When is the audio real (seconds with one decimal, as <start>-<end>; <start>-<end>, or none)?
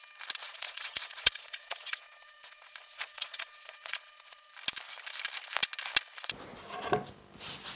0.0-0.4; 4.5-7.8